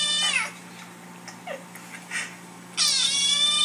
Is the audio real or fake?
real